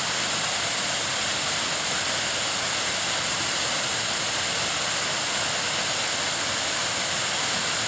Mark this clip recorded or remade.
recorded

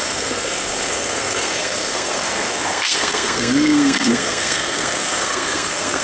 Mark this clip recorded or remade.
remade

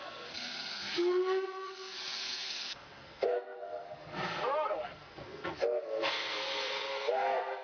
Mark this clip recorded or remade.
remade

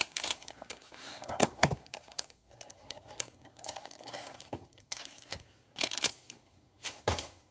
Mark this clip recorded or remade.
remade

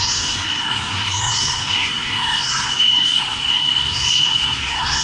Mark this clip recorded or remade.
remade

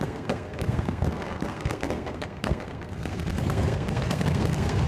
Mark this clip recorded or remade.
remade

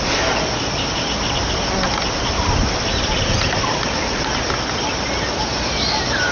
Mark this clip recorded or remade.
recorded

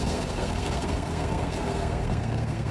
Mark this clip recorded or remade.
remade